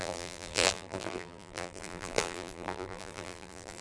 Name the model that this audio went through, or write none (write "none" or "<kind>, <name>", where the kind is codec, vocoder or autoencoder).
vocoder, BigVGAN v2